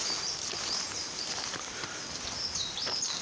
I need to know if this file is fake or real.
real